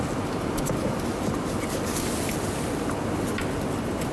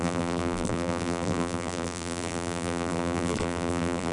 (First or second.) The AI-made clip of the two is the second